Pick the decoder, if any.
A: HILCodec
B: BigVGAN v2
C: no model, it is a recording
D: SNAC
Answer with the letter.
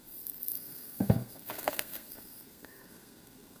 D